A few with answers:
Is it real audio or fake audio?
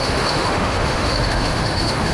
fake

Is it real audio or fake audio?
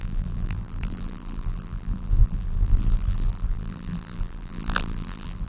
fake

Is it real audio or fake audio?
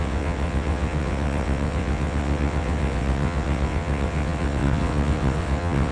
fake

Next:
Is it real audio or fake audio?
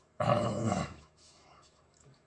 fake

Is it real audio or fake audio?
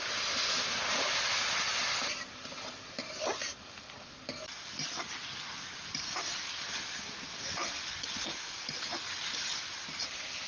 real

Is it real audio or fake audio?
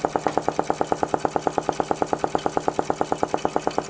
real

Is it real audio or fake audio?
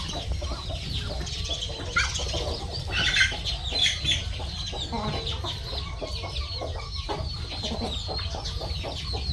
real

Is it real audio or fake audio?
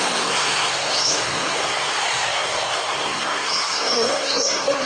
fake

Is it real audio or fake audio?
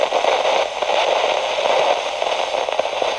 real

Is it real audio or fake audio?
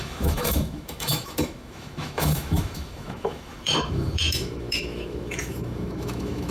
fake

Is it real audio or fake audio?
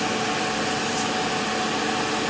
real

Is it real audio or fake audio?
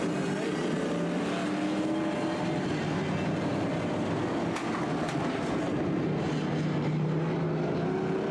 real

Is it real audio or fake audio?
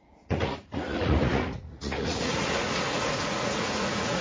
fake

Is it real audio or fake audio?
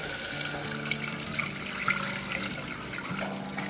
real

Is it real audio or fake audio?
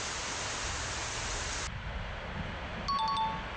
real